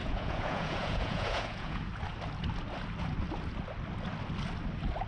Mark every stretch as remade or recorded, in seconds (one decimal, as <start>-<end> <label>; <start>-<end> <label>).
0.0-1.9 remade; 1.9-5.1 recorded